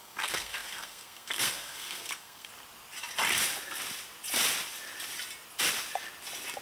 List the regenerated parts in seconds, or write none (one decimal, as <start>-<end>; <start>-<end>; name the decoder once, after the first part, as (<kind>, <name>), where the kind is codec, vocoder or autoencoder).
0.0-2.5 (codec, SNAC)